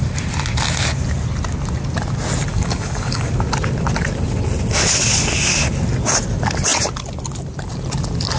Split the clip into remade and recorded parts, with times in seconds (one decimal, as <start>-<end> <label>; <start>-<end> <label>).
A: 0.0-2.5 recorded; 2.5-3.3 remade; 3.3-8.4 recorded